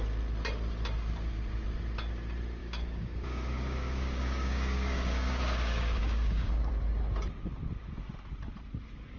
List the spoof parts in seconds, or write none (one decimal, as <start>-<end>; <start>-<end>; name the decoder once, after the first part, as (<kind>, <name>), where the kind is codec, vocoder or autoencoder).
2.6-6.7 (codec, DAC)